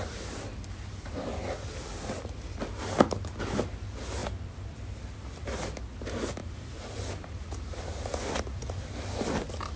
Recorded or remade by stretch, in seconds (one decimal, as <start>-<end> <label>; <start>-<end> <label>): 0.0-9.8 recorded